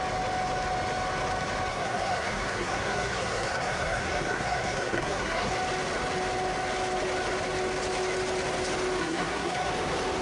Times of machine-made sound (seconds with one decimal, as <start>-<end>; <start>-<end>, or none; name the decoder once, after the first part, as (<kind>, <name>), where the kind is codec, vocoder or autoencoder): 1.7-5.5 (codec, SNAC); 9.0-9.7